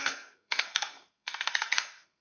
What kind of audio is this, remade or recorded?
remade